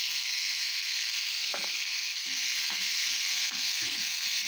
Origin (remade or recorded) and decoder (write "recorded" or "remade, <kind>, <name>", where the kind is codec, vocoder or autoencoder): remade, codec, SNAC